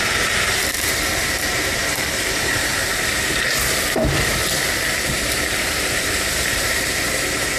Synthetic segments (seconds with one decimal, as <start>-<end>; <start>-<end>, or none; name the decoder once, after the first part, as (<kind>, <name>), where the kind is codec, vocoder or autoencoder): 0.0-4.4 (vocoder, BigVGAN v2); 5.1-7.6